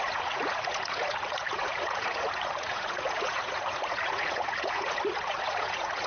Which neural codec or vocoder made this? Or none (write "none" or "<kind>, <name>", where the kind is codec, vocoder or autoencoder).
vocoder, Vocos